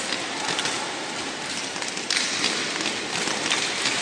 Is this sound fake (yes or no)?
no